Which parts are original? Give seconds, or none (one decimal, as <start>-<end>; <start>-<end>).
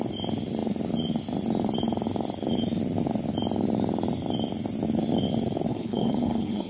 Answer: 0.0-5.7